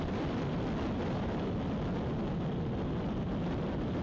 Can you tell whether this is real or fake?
real